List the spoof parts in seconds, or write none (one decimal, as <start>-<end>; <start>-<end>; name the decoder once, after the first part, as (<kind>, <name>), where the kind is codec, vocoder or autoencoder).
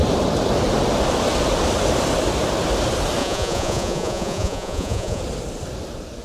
3.2-5.2 (vocoder, Vocos)